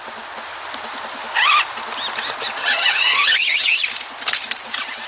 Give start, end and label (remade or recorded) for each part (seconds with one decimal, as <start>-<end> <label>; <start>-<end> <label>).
0.0-2.6 recorded; 2.6-3.8 remade; 3.8-5.1 recorded